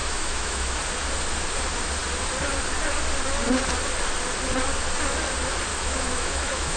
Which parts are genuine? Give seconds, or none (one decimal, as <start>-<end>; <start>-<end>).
0.8-5.7